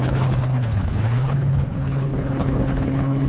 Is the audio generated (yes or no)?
yes